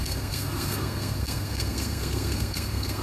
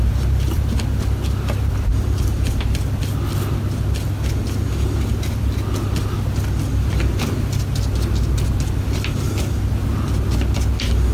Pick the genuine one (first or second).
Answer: second